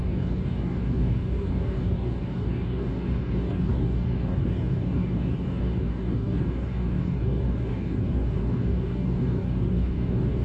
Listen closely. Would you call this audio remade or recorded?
remade